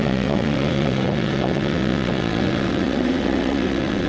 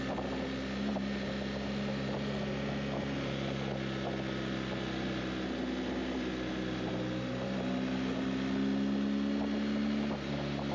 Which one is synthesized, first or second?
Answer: first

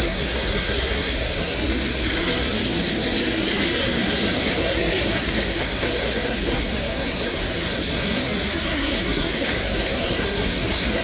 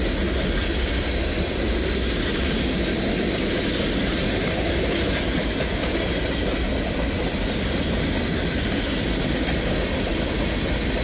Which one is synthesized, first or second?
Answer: first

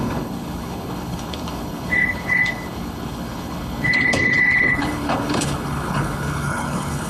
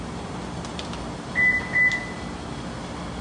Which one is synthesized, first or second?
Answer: first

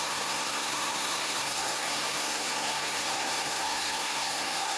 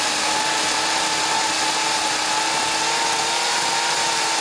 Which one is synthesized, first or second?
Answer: first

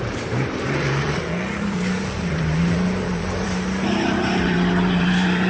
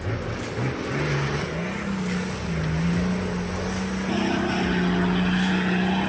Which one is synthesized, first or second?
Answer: first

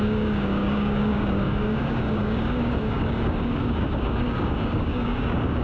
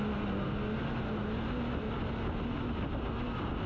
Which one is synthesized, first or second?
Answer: first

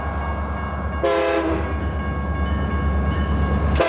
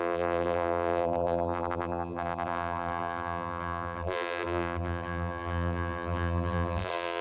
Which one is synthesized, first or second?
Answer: second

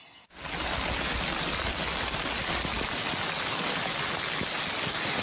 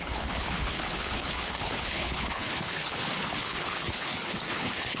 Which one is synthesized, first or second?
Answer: second